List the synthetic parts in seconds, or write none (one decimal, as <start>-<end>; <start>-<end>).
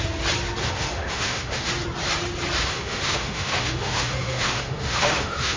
0.6-1.7; 2.6-5.6